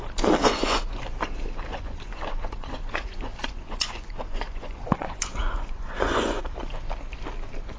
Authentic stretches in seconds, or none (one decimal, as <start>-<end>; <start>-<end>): 0.0-0.4; 1.0-1.7; 6.4-7.8